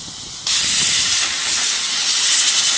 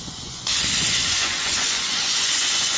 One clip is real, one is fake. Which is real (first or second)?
first